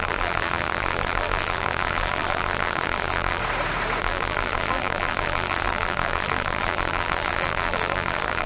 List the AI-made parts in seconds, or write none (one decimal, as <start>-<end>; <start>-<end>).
0.0-3.4; 4.0-8.5